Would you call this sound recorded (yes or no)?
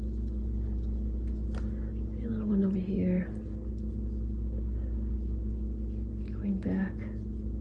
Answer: yes